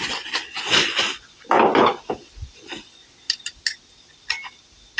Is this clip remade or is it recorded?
recorded